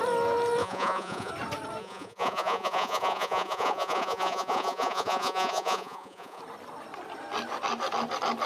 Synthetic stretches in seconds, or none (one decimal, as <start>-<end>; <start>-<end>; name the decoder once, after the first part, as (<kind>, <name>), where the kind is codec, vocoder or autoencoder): 0.6-1.3 (vocoder, Vocos); 1.8-6.4